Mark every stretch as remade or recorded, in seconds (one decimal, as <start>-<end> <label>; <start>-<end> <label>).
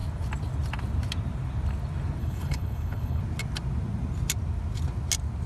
0.0-2.2 recorded; 2.2-3.2 remade; 3.2-5.5 recorded